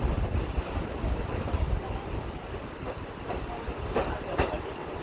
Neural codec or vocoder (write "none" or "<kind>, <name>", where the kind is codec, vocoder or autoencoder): none